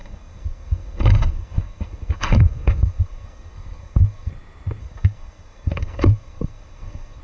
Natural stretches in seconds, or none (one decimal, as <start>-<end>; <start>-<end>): 4.3-4.8